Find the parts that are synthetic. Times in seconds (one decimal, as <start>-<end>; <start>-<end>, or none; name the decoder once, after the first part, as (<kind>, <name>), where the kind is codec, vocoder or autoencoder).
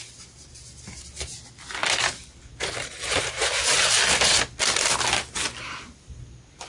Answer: none